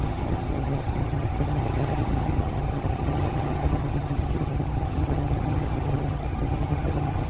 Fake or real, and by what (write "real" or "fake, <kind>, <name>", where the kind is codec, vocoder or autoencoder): fake, vocoder, HiFi-GAN